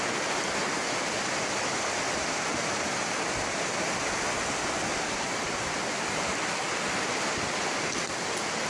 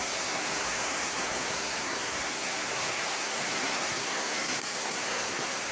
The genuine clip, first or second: first